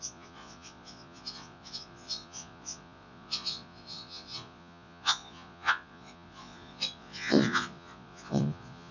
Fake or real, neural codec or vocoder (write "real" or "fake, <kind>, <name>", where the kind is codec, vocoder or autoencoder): fake, vocoder, Vocos